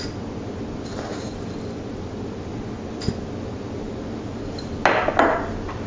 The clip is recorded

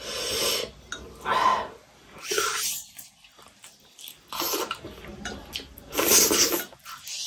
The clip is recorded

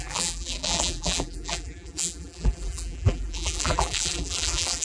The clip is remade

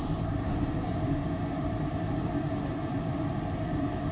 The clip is remade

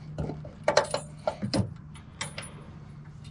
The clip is recorded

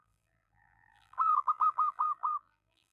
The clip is remade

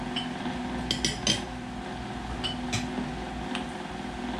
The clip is recorded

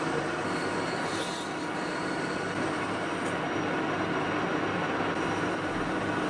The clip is recorded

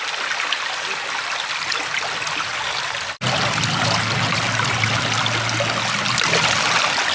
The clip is recorded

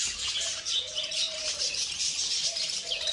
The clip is remade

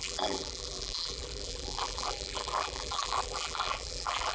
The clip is remade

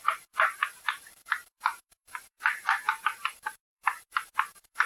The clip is remade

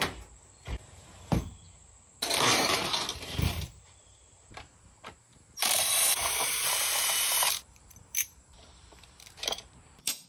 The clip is remade